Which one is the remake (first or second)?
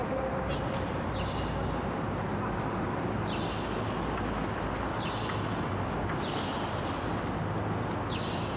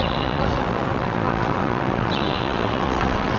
second